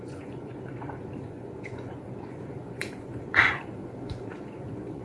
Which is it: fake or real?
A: fake